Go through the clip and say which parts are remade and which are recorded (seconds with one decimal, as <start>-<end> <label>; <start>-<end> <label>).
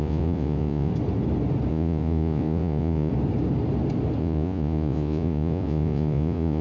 0.0-0.9 remade; 0.9-1.7 recorded; 1.7-3.1 remade; 3.1-4.2 recorded; 4.2-6.6 remade